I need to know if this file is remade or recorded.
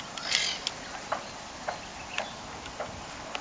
recorded